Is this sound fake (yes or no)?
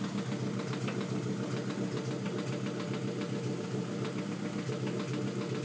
no